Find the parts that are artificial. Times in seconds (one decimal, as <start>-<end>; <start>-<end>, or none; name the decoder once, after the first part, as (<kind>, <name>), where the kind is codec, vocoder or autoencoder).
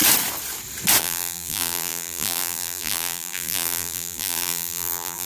1.0-5.3 (vocoder, BigVGAN v2)